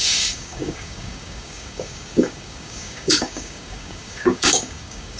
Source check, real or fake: fake